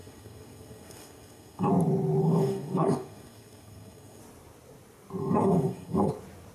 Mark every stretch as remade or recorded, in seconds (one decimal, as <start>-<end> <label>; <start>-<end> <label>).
0.0-1.7 remade; 1.7-2.2 recorded; 2.2-4.2 remade; 4.2-5.2 recorded; 5.2-6.1 remade; 6.1-6.5 recorded